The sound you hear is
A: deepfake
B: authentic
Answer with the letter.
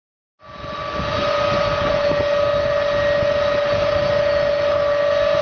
B